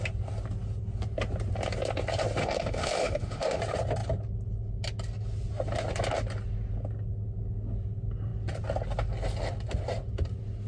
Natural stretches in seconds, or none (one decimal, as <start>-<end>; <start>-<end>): 0.0-2.4; 3.6-10.7